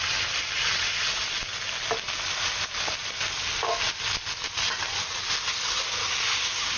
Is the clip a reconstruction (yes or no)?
no